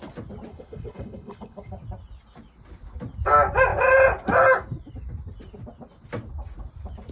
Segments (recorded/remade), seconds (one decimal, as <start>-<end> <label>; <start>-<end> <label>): 0.0-0.5 recorded; 0.5-1.7 remade; 1.7-7.1 recorded